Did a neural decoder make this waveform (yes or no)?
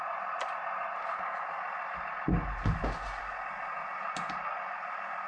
no